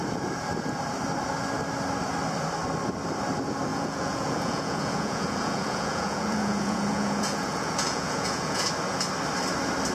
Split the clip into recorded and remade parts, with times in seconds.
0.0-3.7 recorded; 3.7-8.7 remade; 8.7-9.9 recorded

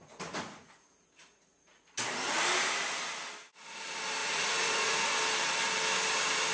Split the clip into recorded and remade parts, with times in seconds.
0.0-1.9 remade; 1.9-4.2 recorded; 4.2-5.1 remade; 5.1-6.5 recorded